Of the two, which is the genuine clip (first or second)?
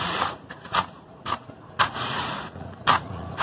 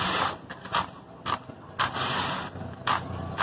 second